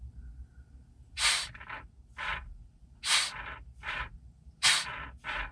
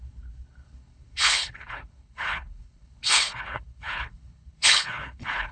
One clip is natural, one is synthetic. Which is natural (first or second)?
first